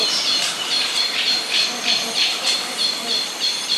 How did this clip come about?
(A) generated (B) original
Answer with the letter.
A